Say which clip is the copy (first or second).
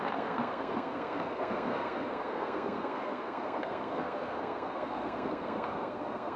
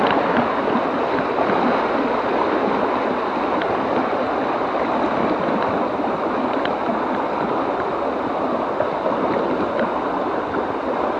first